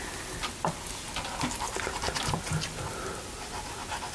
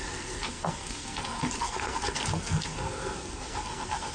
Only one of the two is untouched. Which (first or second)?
first